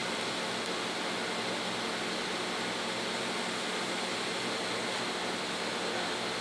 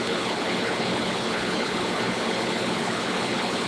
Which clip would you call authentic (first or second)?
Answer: first